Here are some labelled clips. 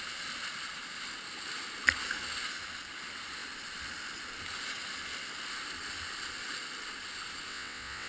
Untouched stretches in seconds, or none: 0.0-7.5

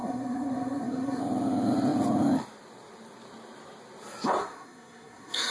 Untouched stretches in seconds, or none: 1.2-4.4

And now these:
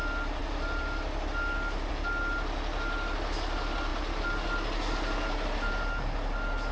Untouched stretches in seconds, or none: 0.0-6.7